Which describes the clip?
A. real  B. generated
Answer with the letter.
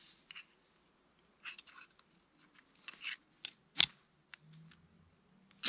A